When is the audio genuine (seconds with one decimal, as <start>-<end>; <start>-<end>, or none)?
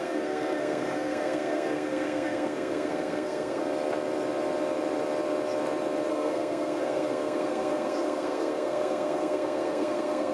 3.6-6.1